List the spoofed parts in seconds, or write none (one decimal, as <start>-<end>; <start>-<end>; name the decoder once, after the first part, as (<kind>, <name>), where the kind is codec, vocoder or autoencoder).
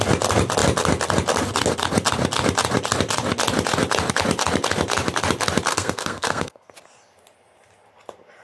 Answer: 5.7-6.7 (codec, SNAC)